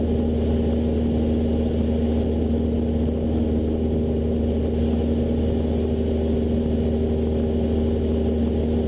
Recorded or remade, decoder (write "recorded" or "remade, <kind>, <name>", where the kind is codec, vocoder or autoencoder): recorded